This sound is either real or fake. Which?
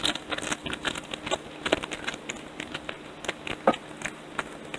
real